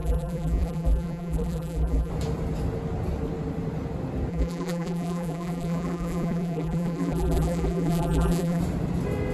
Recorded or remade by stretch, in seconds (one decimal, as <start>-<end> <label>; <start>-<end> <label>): 0.0-2.1 remade; 2.1-4.3 recorded; 4.3-8.6 remade; 8.6-9.3 recorded